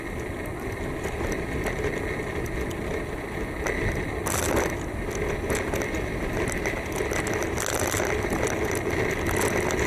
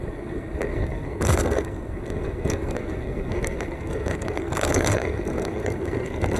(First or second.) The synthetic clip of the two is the second